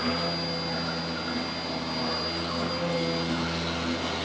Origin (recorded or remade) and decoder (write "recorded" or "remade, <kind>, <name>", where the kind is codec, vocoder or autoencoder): recorded